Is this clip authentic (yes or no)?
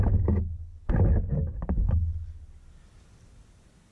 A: yes